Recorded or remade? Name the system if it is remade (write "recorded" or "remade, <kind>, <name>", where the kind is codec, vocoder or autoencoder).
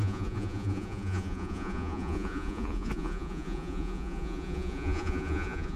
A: remade, vocoder, Vocos